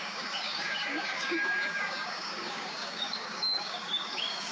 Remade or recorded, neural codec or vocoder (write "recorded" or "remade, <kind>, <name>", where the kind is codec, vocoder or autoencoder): remade, codec, DAC